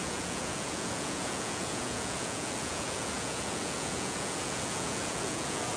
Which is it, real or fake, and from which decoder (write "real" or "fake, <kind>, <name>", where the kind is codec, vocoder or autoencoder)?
fake, vocoder, Vocos